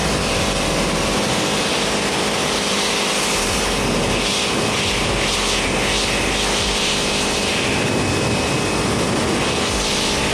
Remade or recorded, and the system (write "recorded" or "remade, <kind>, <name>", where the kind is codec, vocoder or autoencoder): recorded